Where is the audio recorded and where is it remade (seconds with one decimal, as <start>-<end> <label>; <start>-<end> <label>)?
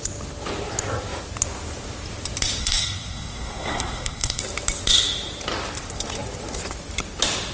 0.0-2.6 recorded; 2.6-4.4 remade; 4.4-7.5 recorded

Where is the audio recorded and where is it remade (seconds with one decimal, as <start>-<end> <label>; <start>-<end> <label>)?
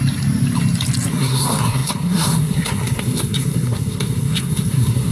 0.0-1.1 recorded; 1.1-5.1 remade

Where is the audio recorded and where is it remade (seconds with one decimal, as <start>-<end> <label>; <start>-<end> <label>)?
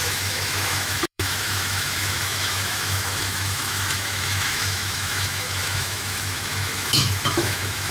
0.0-7.9 remade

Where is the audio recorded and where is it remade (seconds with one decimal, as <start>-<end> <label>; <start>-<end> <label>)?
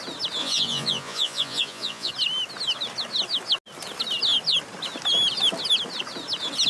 0.0-0.4 recorded; 0.4-2.1 remade; 2.1-6.7 recorded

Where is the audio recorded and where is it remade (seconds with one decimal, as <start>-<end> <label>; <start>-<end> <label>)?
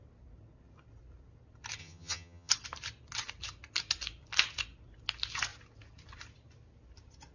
0.0-1.8 recorded; 1.8-2.5 remade; 2.5-7.3 recorded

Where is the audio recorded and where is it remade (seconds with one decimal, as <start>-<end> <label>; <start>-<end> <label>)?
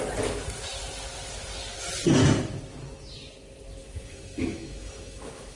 0.0-3.8 recorded; 3.8-5.6 remade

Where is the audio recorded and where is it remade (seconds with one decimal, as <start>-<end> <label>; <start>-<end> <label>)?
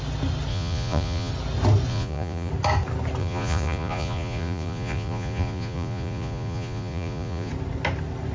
0.0-0.5 recorded; 0.5-1.3 remade; 1.3-1.9 recorded; 1.9-2.5 remade; 2.5-3.2 recorded; 3.2-7.5 remade; 7.5-8.3 recorded